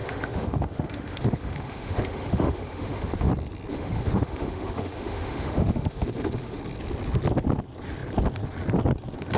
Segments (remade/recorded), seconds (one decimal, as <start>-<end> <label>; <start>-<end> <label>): 0.0-3.3 remade; 3.3-3.7 recorded; 3.7-6.6 remade; 6.6-9.4 recorded